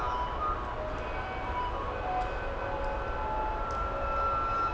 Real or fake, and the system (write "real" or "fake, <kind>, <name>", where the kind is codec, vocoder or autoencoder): real